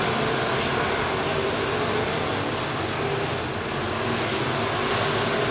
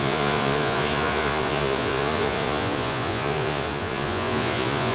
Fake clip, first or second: second